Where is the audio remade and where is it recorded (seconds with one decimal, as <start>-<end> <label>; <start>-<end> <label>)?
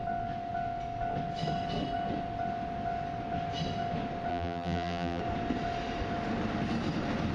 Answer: 0.0-4.3 recorded; 4.3-5.2 remade; 5.2-7.3 recorded